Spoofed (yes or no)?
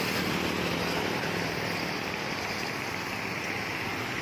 no